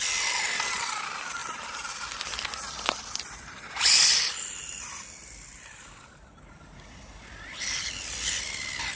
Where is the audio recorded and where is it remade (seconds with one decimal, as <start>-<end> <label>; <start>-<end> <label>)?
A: 0.0-1.4 recorded; 1.4-6.1 remade; 6.1-9.0 recorded